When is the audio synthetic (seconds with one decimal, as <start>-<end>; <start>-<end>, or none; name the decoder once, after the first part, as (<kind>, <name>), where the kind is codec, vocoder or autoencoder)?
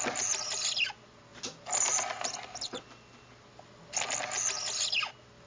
none